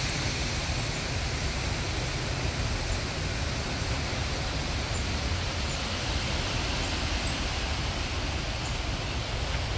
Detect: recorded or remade recorded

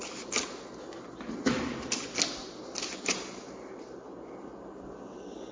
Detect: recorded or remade recorded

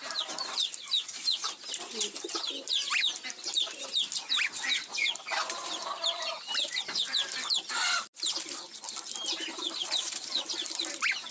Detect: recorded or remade recorded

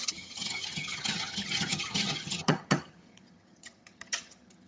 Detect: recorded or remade remade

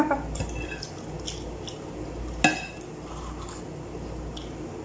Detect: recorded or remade recorded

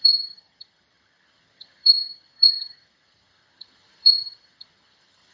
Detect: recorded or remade remade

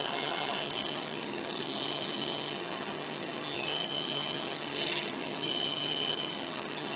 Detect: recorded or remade remade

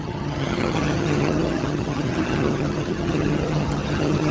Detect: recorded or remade remade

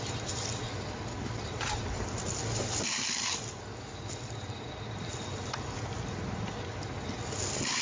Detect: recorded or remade recorded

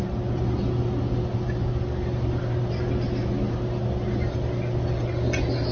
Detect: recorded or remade recorded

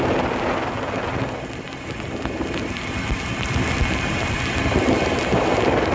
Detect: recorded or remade recorded